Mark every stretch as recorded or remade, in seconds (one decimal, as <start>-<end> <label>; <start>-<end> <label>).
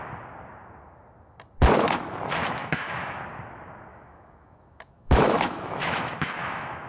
0.0-2.6 recorded; 2.6-3.2 remade; 3.2-3.9 recorded; 3.9-6.9 remade